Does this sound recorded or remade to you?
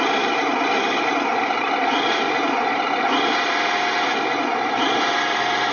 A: remade